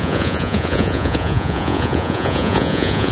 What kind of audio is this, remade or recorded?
remade